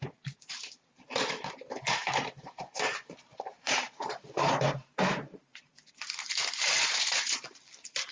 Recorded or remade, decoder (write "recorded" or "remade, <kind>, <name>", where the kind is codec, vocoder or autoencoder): remade, vocoder, BigVGAN v2